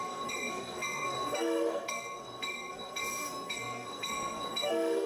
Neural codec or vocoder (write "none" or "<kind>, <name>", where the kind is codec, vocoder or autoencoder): codec, SNAC